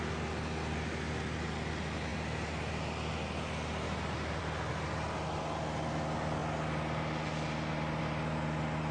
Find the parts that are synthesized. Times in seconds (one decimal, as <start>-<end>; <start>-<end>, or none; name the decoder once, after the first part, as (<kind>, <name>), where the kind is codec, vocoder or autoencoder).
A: none